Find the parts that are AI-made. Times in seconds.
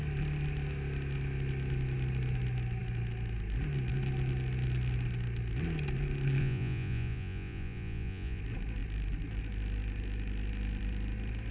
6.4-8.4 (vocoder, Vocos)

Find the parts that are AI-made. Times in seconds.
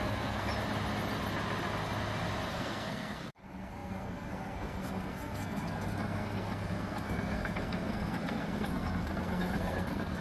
0.0-0.5 (codec, SNAC); 2.5-10.2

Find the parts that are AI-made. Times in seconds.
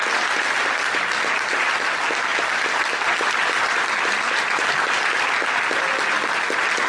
none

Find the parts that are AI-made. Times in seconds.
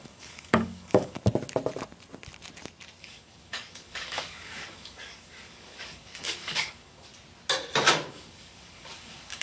0.0-1.2 (codec, DAC); 3.0-7.1; 8.1-9.4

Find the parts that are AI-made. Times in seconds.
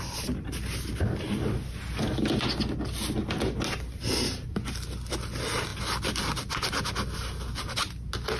none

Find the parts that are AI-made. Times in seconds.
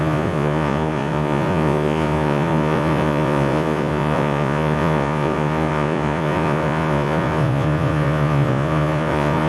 0.0-9.5 (vocoder, Vocos)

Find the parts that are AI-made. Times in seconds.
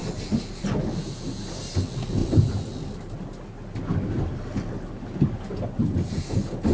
none